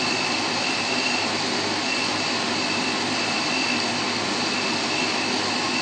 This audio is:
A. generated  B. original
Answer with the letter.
B